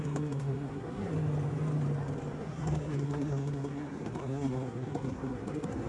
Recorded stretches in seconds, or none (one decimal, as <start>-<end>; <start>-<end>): 1.1-2.4